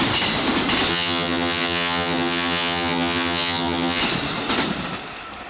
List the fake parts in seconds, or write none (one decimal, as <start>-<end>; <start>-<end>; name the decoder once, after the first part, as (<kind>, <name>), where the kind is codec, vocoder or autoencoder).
0.9-4.0 (vocoder, HiFi-GAN)